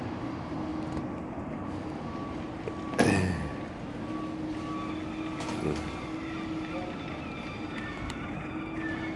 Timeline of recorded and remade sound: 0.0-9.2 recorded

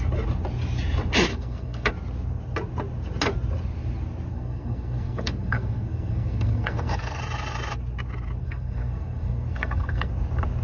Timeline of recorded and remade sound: 0.0-1.3 recorded; 1.3-1.9 remade; 1.9-4.3 recorded; 4.3-7.2 remade; 7.2-8.4 recorded; 8.4-10.1 remade; 10.1-10.6 recorded